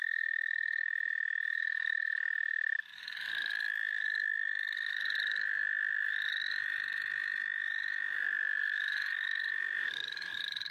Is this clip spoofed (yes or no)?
yes